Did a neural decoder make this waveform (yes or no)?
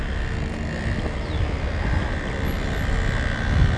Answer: no